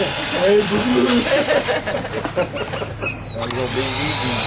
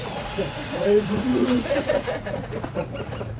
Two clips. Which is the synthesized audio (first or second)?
second